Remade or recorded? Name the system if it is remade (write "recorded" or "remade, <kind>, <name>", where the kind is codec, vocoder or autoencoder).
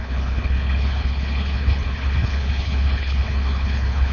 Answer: remade, codec, HILCodec